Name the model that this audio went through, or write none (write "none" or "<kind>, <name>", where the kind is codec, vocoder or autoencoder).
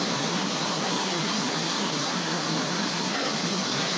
codec, SNAC